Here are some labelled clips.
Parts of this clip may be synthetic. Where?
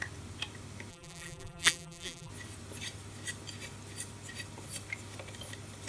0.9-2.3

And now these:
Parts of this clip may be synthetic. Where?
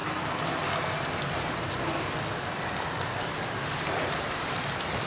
3.1-5.1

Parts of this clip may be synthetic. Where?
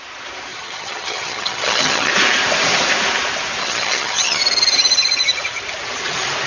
0.5-2.1; 3.6-4.4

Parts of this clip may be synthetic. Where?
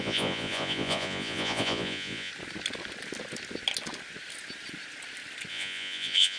0.0-2.3; 5.5-6.4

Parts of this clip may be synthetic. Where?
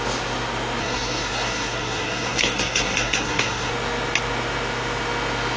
0.8-3.7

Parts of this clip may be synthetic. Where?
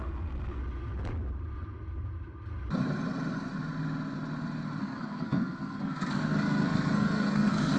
0.0-0.6; 4.8-7.8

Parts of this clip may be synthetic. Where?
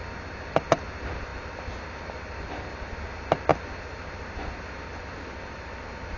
none